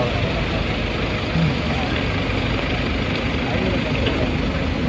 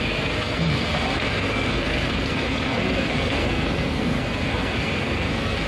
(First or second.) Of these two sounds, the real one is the first